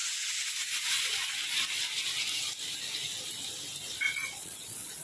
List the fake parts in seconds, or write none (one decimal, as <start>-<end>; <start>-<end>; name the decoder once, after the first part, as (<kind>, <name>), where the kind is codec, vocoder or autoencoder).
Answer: 0.0-1.3 (vocoder, Vocos); 4.3-5.0